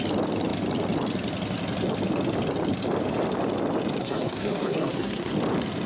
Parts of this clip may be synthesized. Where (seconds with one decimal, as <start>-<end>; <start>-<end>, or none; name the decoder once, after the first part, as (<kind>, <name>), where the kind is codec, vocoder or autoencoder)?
4.0-5.3 (codec, SNAC)